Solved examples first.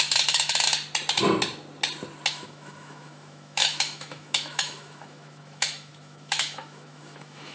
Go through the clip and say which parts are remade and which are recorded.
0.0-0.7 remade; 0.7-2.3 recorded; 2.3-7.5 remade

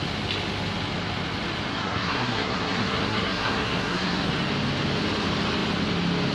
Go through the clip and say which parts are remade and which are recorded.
0.0-1.7 recorded; 1.7-4.3 remade; 4.3-6.3 recorded

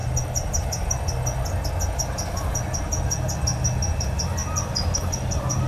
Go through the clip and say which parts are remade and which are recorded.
0.0-5.7 recorded

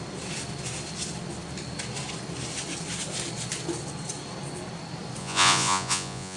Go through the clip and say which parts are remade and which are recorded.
0.0-5.2 recorded; 5.2-6.4 remade

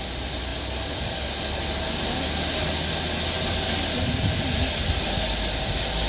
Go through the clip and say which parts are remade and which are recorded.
0.0-6.1 recorded

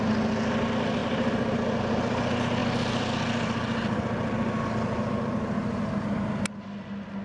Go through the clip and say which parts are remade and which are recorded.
0.0-7.2 recorded

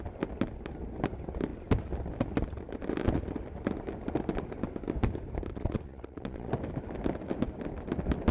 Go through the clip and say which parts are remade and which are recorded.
0.0-5.5 recorded; 5.5-6.5 remade; 6.5-8.3 recorded